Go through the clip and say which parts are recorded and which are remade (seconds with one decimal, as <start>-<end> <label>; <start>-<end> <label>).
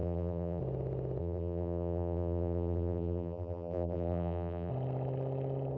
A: 0.0-0.6 remade; 0.6-1.2 recorded; 1.2-4.7 remade; 4.7-5.8 recorded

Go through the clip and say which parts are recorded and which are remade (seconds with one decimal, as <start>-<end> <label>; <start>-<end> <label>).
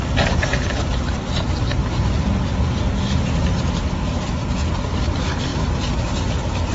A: 0.0-6.7 recorded